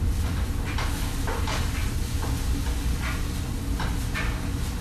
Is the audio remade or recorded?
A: recorded